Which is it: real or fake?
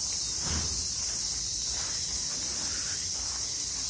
real